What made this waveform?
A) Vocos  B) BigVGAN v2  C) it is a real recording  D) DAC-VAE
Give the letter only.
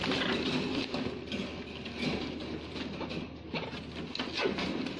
C